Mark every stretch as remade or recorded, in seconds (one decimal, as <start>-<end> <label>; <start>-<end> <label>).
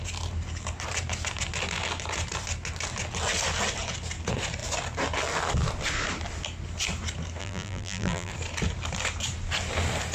0.0-7.4 recorded; 7.4-8.3 remade; 8.3-10.1 recorded